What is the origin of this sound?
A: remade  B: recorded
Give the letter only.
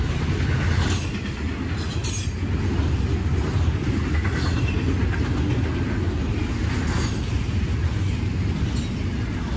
B